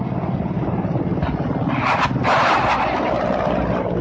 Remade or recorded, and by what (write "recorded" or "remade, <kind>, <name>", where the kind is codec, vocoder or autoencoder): recorded